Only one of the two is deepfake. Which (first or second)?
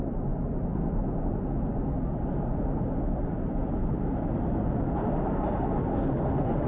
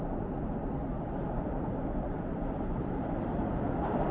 second